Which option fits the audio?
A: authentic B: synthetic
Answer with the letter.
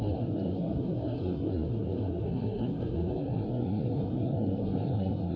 B